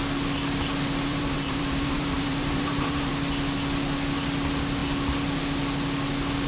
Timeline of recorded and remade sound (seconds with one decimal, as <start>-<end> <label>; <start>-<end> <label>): 0.0-1.1 recorded; 1.1-3.1 remade; 3.1-6.5 recorded